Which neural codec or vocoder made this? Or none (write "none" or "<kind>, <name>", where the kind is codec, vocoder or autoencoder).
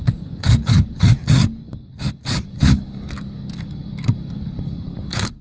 codec, DAC